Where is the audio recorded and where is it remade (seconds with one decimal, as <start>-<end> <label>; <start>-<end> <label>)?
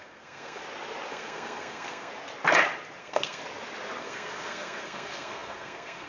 0.0-0.6 remade; 0.6-1.1 recorded; 1.1-2.1 remade; 2.1-3.0 recorded; 3.0-3.4 remade; 3.4-4.0 recorded; 4.0-6.1 remade